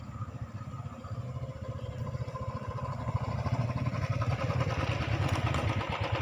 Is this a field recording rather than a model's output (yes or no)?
yes